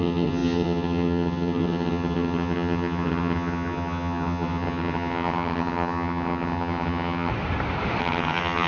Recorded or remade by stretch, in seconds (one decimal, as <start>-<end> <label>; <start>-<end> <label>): 0.0-7.3 remade; 7.3-8.0 recorded; 8.0-8.7 remade